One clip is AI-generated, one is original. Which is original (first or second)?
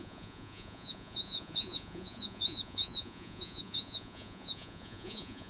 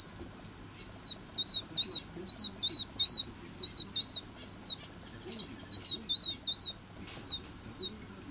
second